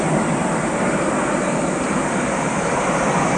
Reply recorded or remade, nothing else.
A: remade